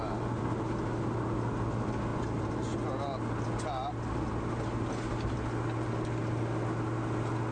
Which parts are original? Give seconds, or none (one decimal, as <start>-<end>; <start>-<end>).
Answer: 0.0-7.5